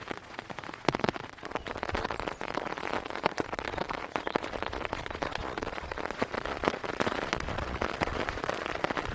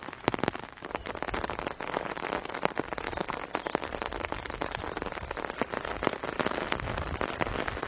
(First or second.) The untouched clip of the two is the second